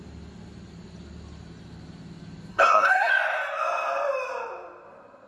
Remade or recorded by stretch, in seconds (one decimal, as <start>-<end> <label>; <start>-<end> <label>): 0.0-2.5 recorded; 2.5-3.1 remade; 3.1-5.3 recorded